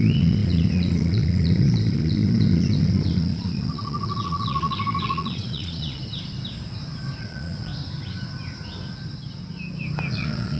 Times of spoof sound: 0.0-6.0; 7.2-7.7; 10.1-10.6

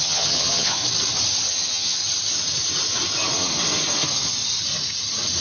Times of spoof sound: 0.0-0.8; 1.5-2.0

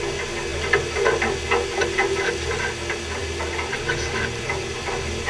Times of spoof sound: none